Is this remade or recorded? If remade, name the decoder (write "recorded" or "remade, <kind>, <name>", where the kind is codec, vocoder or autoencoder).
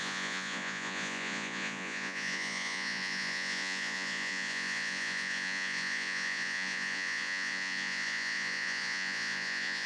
remade, vocoder, Vocos